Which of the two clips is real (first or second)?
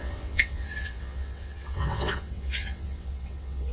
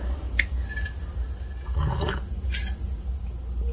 second